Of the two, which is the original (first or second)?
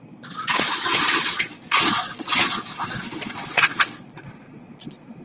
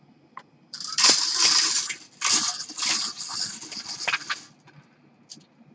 second